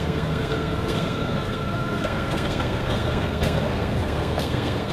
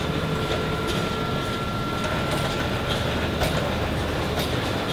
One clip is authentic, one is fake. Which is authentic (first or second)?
second